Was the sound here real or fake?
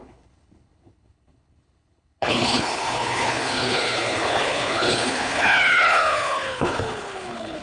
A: fake